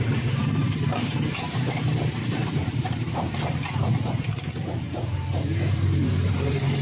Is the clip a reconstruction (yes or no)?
yes